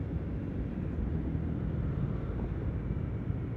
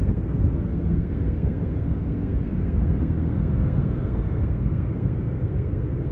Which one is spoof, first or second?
second